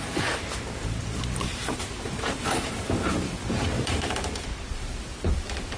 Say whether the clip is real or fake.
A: fake